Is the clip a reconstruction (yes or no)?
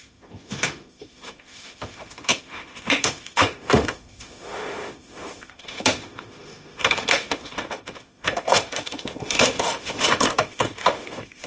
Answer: yes